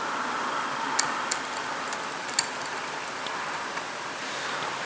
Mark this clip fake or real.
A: real